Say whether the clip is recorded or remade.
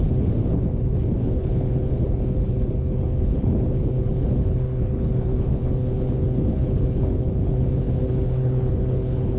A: remade